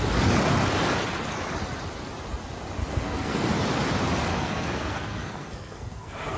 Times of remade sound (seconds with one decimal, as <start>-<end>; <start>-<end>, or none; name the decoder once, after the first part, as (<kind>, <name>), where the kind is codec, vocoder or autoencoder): 2.8-3.4 (codec, SNAC); 4.3-6.4